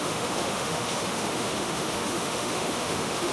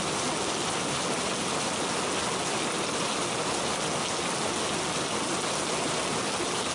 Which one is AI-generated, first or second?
first